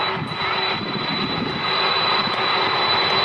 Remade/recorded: recorded